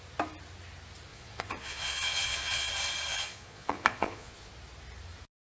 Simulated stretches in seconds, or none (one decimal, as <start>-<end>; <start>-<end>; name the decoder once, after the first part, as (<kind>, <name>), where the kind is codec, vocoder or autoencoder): 1.1-2.7 (vocoder, Vocos); 3.1-4.5